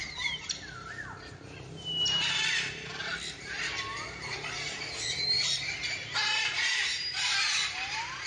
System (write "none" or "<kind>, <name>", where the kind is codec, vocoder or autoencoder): none